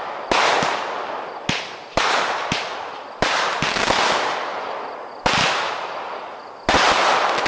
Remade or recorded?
recorded